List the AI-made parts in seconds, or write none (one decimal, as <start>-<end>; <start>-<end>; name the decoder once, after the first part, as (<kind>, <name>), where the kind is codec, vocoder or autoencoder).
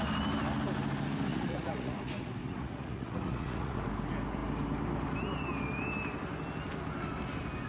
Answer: 1.3-3.8 (vocoder, Vocos)